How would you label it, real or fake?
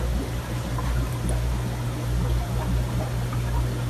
real